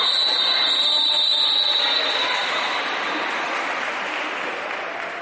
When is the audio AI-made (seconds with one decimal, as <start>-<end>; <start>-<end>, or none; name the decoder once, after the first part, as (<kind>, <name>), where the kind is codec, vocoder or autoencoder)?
none

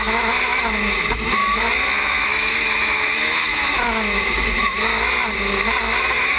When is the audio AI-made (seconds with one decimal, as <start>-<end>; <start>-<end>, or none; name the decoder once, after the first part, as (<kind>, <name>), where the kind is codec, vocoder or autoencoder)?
0.0-1.4 (autoencoder, DAC-VAE); 2.1-4.9; 6.0-6.4